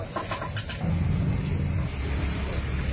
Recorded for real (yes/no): yes